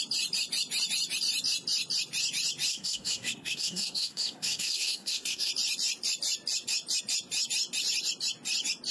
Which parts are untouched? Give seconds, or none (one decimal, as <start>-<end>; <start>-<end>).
0.0-2.7; 5.5-8.9